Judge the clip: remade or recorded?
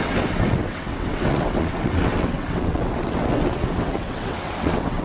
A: remade